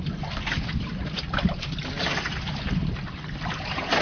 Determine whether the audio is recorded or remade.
recorded